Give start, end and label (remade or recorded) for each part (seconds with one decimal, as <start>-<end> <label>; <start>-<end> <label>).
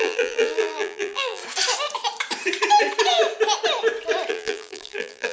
0.0-1.4 remade; 1.4-4.3 recorded; 4.3-5.3 remade